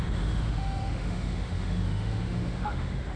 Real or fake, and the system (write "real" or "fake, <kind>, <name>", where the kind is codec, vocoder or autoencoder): fake, autoencoder, DAC-VAE